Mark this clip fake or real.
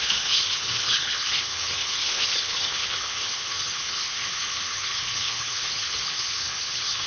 fake